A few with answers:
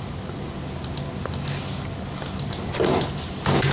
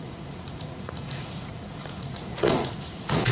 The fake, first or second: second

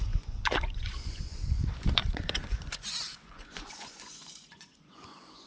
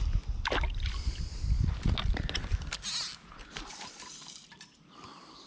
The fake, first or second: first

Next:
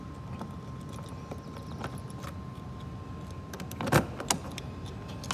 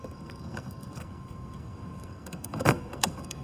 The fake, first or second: second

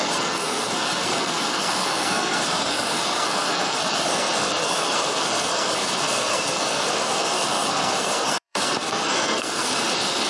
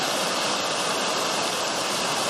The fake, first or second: first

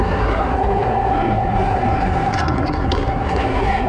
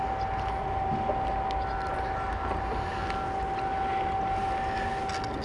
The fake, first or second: first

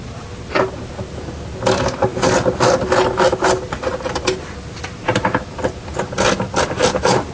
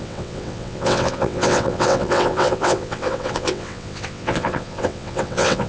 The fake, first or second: second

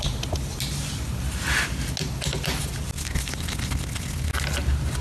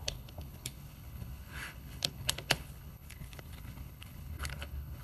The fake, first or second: second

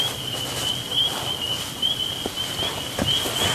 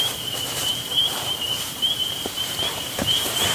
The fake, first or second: second